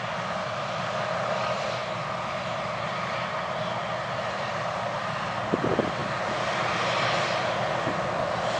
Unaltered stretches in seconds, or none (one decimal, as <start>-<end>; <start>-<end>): 0.0-1.8; 5.4-8.6